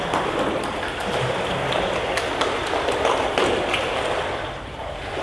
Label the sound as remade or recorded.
recorded